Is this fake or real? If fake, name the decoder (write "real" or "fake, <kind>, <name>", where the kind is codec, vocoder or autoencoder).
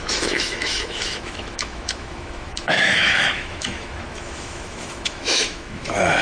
fake, autoencoder, DAC-VAE